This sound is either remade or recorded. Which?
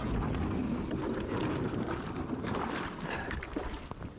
recorded